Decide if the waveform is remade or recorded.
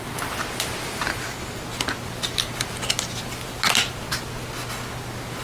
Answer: recorded